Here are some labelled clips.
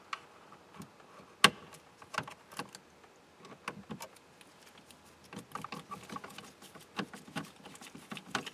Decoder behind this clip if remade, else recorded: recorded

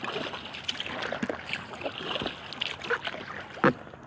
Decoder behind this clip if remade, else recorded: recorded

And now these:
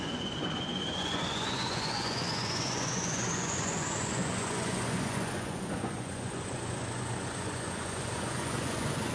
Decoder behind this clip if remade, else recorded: remade, vocoder, Vocos